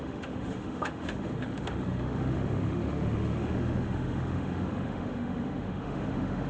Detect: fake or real fake